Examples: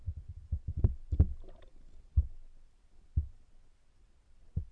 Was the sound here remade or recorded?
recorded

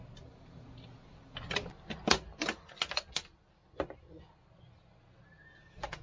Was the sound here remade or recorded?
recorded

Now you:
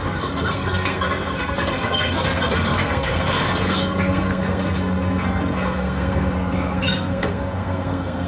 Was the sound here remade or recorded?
remade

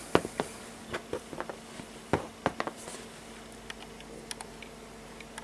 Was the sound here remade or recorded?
recorded